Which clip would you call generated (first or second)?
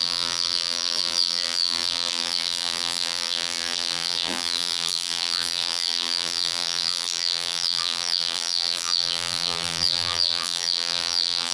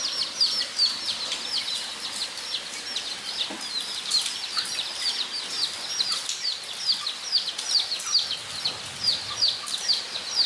first